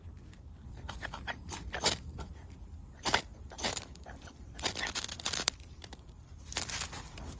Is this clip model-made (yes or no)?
yes